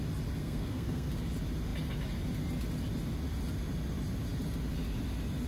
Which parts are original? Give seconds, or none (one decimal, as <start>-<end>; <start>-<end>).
0.0-0.4; 1.1-5.5